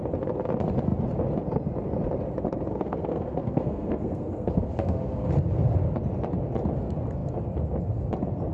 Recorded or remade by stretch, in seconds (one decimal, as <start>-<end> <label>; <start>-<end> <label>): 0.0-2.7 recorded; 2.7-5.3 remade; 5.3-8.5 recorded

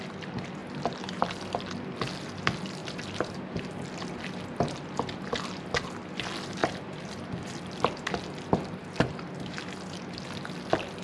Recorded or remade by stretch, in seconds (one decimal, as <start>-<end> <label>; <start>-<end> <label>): 0.0-0.6 recorded; 0.6-1.2 remade; 1.2-2.8 recorded; 2.8-4.0 remade; 4.0-6.6 recorded; 6.6-7.6 remade; 7.6-11.0 recorded

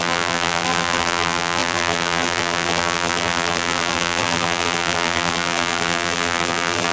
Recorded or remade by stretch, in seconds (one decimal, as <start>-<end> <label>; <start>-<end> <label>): 0.0-6.9 remade

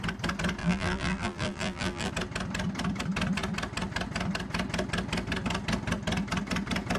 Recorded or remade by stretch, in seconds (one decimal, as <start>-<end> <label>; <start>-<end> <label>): 0.0-0.6 recorded; 0.6-2.1 remade; 2.1-7.0 recorded